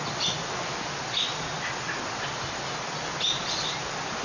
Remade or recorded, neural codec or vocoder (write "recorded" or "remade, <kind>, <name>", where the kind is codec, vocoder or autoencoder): recorded